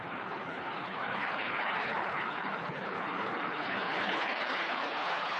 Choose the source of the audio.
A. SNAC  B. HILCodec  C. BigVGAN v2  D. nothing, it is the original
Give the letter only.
B